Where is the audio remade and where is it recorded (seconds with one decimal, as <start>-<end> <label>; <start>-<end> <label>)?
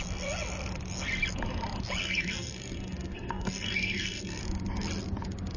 0.0-2.0 recorded; 2.0-4.4 remade; 4.4-5.6 recorded